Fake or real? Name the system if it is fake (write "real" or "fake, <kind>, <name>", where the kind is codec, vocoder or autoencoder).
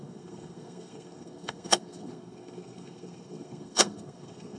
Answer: fake, codec, SNAC